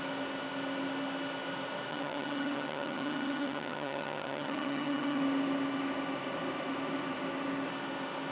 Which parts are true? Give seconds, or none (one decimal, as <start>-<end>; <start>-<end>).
0.0-1.9; 5.2-8.3